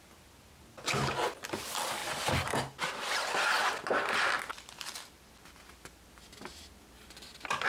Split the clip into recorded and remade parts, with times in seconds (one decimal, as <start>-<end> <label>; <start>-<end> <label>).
0.0-7.7 recorded